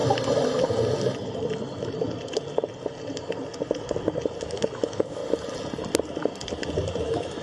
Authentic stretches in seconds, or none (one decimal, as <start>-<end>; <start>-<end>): 0.0-4.4; 5.2-7.0